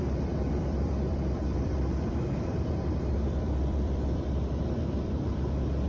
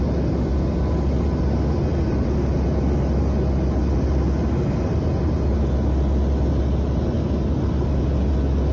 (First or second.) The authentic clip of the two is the second